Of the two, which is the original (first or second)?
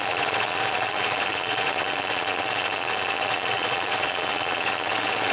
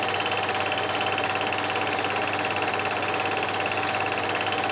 second